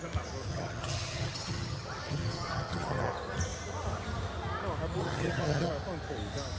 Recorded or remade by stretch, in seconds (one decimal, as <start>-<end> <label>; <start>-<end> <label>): 0.0-0.5 recorded; 0.5-3.1 remade; 3.1-5.0 recorded; 5.0-5.7 remade; 5.7-6.6 recorded